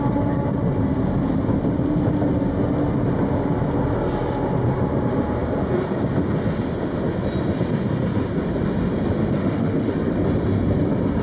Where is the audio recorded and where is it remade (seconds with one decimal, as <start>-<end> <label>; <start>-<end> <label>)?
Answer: 0.0-9.4 recorded; 9.4-9.9 remade; 9.9-11.2 recorded

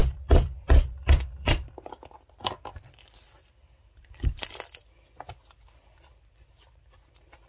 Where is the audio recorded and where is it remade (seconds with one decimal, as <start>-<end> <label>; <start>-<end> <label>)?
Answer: 0.0-7.5 remade

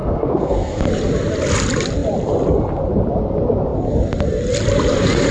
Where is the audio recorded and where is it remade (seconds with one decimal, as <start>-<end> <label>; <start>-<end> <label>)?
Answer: 0.0-0.9 remade; 0.9-5.3 recorded

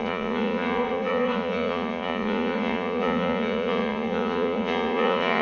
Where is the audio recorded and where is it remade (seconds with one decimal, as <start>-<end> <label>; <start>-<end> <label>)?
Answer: 0.0-5.4 remade

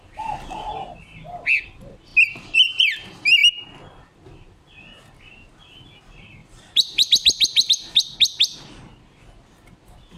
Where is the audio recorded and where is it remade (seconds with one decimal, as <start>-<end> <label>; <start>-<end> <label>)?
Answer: 0.0-6.4 recorded; 6.4-7.7 remade; 7.7-10.2 recorded